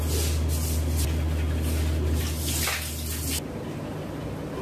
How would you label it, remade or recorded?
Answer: recorded